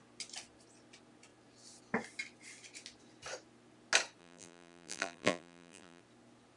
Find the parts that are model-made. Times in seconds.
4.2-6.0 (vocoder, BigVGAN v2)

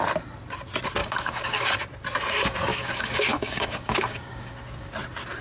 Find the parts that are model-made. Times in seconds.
1.0-1.7 (codec, DAC); 2.7-4.5

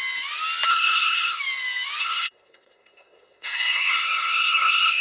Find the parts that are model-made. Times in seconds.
0.7-1.4 (codec, SNAC); 2.0-5.0

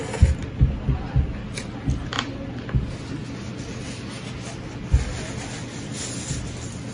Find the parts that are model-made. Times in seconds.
none